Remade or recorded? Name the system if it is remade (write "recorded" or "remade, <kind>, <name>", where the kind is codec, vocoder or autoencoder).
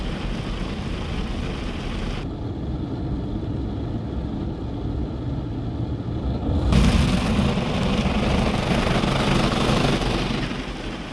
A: recorded